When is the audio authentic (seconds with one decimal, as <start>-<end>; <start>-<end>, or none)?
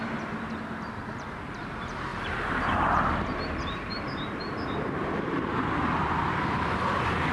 0.0-1.0; 2.1-3.6; 5.5-6.4